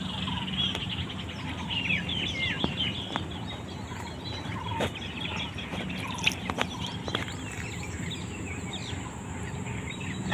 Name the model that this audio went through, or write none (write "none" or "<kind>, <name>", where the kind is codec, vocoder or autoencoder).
none